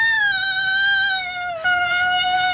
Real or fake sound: real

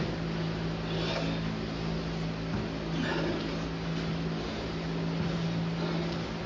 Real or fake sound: real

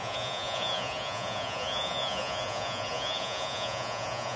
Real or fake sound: fake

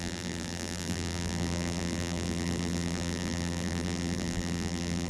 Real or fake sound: fake